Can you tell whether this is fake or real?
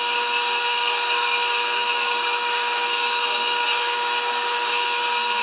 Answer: fake